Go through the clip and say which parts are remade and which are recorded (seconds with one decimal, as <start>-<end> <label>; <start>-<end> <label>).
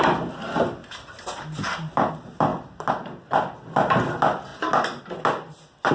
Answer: 0.0-5.9 recorded